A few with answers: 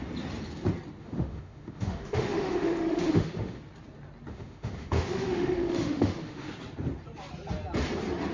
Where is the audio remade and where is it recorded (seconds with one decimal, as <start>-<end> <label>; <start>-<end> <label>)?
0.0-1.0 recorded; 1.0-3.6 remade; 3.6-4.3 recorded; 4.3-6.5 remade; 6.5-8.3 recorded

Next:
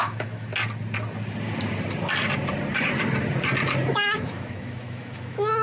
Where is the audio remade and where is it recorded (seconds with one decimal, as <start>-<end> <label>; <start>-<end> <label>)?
0.0-0.5 remade; 0.5-3.9 recorded; 3.9-5.6 remade

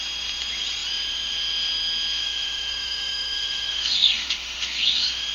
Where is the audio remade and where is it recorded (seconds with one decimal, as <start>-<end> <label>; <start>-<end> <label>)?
0.0-2.2 recorded; 2.2-5.3 remade

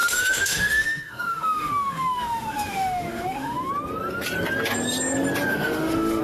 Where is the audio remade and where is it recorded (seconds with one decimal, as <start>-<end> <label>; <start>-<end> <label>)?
0.0-3.7 remade; 3.7-5.5 recorded; 5.5-6.2 remade